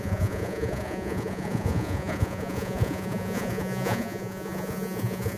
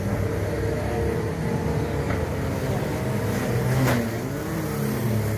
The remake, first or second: first